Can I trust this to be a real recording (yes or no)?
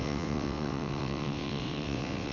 no